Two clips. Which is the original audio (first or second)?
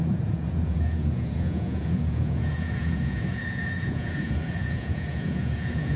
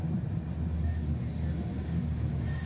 second